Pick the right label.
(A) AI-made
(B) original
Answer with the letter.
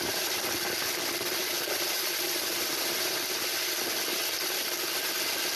B